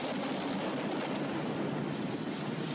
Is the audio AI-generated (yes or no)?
no